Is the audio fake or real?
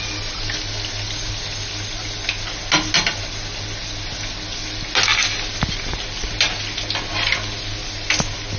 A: real